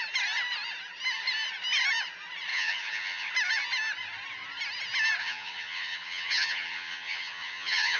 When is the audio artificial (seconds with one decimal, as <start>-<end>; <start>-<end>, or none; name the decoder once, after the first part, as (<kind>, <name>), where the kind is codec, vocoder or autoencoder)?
2.5-3.3 (vocoder, HiFi-GAN); 5.2-8.0